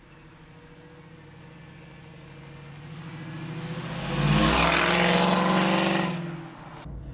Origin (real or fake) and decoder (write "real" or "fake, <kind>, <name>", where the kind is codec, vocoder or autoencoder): real